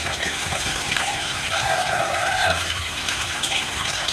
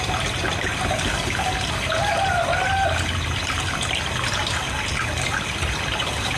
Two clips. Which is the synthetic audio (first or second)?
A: first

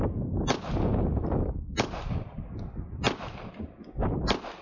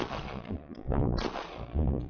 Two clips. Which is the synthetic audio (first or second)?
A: second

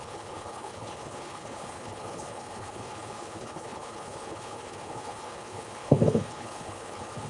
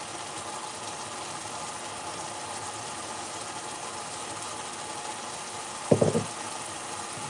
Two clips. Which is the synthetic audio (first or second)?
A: first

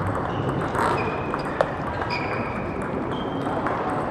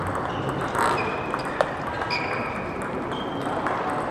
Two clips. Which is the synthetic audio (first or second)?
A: first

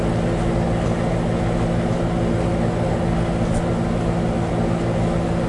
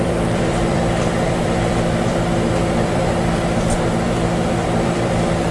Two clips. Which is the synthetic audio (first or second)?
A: second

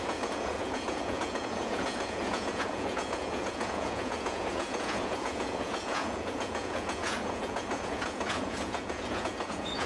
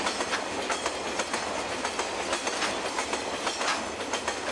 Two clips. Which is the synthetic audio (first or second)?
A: first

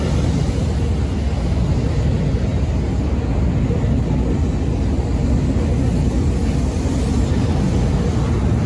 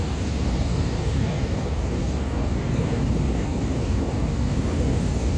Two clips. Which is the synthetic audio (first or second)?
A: second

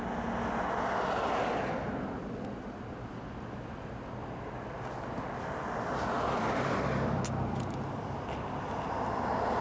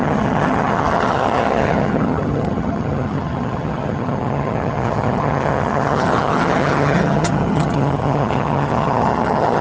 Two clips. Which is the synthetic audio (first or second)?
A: second